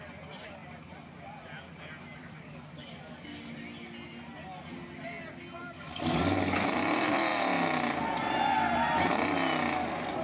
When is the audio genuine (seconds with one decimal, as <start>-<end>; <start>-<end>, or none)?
0.0-2.2; 3.4-5.6; 6.2-10.2